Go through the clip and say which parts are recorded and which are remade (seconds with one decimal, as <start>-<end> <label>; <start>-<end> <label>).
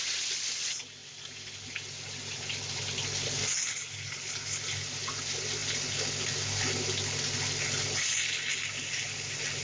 0.0-9.6 recorded